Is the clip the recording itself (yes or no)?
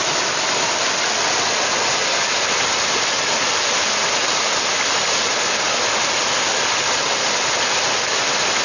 yes